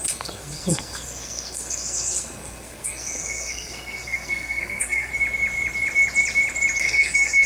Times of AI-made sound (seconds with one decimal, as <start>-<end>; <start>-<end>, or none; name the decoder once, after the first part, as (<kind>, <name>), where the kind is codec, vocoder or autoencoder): 0.0-5.1 (codec, SNAC); 6.8-7.5